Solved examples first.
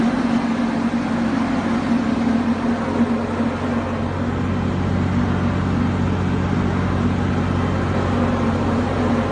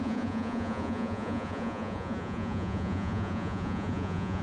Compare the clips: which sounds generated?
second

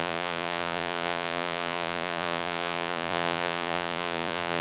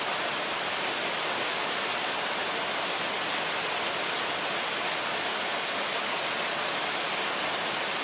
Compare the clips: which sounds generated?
first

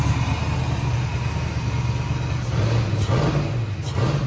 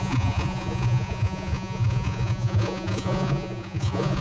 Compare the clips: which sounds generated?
second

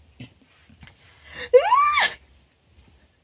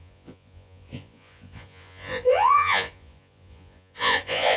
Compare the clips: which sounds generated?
second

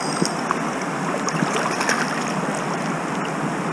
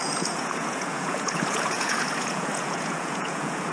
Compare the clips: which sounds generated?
second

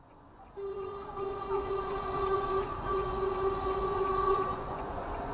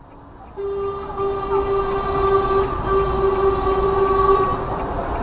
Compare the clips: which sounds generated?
first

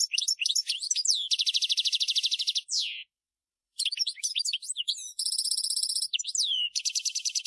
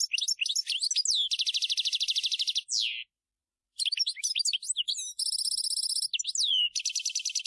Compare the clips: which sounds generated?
first